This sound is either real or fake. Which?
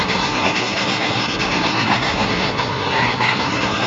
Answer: fake